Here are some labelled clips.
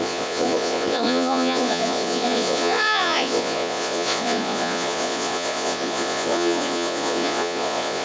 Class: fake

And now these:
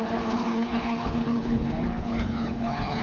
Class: fake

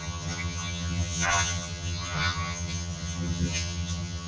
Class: fake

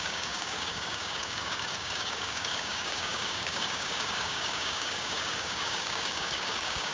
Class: fake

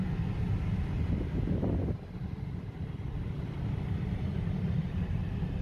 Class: real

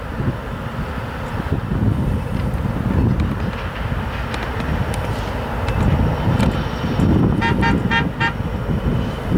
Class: real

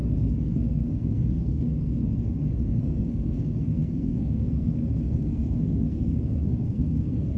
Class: fake